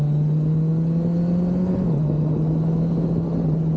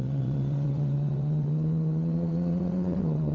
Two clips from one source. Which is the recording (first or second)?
first